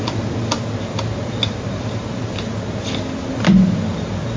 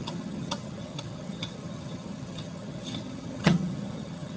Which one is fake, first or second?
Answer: second